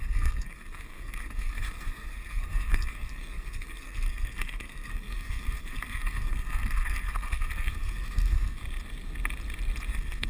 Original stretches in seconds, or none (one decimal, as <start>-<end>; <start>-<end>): 8.6-9.9